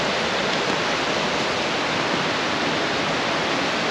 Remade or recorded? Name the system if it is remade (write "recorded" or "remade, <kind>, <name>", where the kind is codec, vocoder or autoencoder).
recorded